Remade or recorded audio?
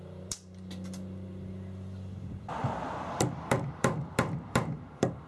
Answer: remade